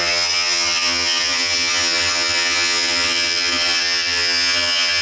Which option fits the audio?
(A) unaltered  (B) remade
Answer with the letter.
B